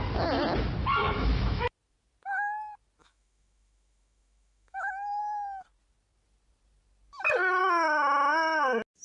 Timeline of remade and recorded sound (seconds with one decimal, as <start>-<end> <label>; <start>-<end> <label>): 0.0-0.8 recorded; 0.8-1.7 remade; 1.7-3.0 recorded; 3.0-5.2 remade; 5.2-9.0 recorded